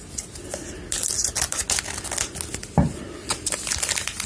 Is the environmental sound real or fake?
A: real